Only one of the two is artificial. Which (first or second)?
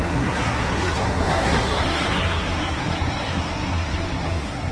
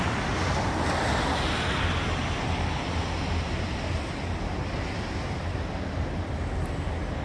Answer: first